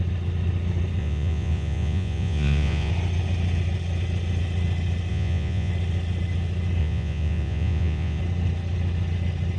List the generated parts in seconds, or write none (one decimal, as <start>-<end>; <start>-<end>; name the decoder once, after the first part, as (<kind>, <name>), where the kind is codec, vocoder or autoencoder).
1.0-2.9 (vocoder, Vocos); 5.1-5.7; 6.8-8.2